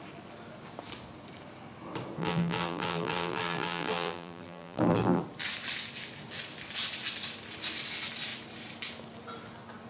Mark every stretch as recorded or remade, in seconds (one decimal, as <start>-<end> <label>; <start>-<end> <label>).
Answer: 0.0-2.2 recorded; 2.2-5.2 remade; 5.2-9.9 recorded